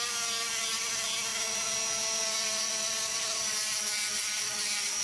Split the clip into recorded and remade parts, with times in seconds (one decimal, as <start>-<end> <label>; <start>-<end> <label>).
0.0-5.0 recorded